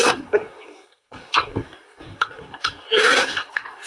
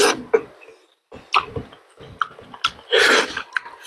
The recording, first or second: second